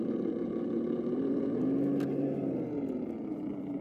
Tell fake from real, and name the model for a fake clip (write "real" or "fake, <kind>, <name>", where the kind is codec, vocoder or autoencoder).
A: real